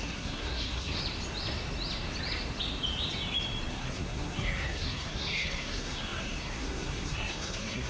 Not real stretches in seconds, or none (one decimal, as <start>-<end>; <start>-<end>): 0.0-1.0; 3.7-7.9